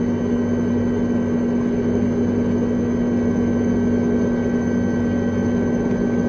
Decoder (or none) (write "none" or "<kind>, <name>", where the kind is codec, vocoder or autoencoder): none